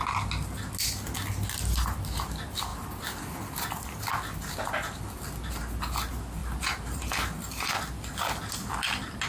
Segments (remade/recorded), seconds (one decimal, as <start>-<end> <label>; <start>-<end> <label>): 0.0-6.4 recorded; 6.4-7.1 remade; 7.1-9.3 recorded

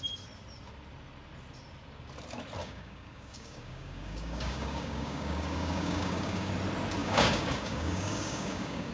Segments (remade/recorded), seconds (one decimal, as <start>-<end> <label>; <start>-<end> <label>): 0.0-2.6 recorded; 2.6-6.5 remade; 6.5-7.0 recorded; 7.0-8.9 remade

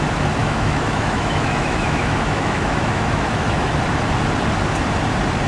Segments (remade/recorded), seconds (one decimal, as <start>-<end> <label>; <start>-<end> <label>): 0.0-0.4 recorded; 0.4-3.7 remade; 3.7-5.5 recorded

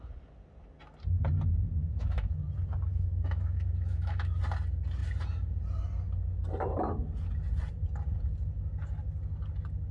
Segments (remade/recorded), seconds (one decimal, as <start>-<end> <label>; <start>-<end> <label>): 0.0-1.8 recorded; 1.8-2.4 remade; 2.4-2.9 recorded; 2.9-4.4 remade; 4.4-9.9 recorded

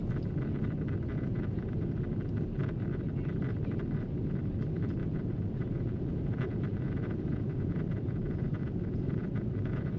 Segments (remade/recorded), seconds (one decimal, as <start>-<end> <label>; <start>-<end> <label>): 0.0-1.1 recorded; 1.1-1.9 remade; 1.9-5.0 recorded; 5.0-10.0 remade

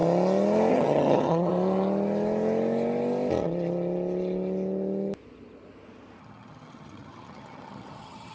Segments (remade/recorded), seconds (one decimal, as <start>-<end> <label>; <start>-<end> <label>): 0.0-0.7 recorded; 0.7-1.5 remade; 1.5-6.2 recorded; 6.2-8.3 remade

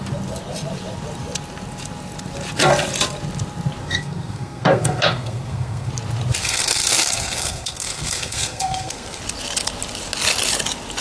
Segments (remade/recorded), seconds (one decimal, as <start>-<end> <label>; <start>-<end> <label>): 0.0-3.8 recorded; 3.8-5.9 remade; 5.9-6.4 recorded; 6.4-9.2 remade; 9.2-11.0 recorded

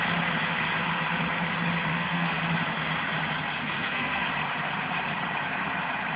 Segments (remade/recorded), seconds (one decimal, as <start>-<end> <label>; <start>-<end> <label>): 0.0-1.9 recorded; 1.9-2.4 remade; 2.4-3.6 recorded; 3.6-4.3 remade; 4.3-6.2 recorded